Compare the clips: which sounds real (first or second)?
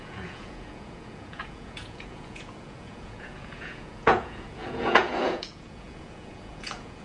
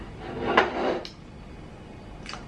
second